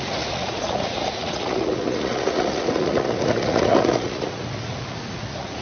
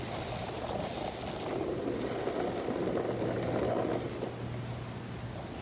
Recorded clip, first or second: second